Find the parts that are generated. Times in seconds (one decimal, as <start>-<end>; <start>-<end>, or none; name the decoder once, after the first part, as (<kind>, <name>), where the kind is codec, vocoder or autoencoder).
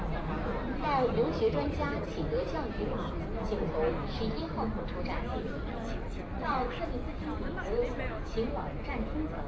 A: 5.5-6.8 (vocoder, WaveNeXt)